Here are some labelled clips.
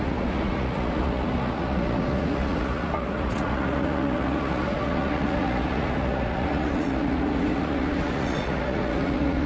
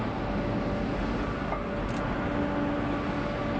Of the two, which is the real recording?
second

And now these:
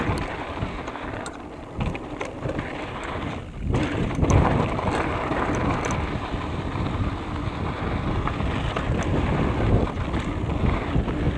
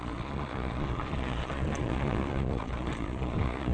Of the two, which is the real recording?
first